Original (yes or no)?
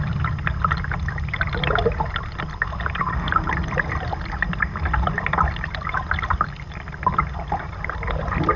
yes